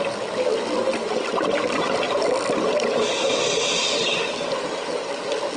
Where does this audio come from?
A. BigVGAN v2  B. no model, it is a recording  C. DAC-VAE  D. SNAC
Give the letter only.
B